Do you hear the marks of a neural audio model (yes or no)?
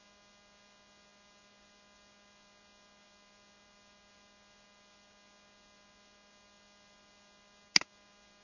no